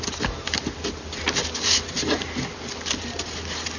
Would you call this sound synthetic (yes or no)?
no